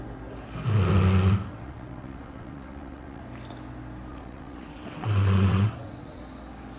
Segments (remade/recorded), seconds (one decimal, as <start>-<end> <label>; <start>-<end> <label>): 0.0-1.5 recorded; 1.5-3.2 remade; 3.2-4.1 recorded; 4.1-6.2 remade; 6.2-6.8 recorded